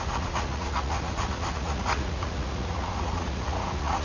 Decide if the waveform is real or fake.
fake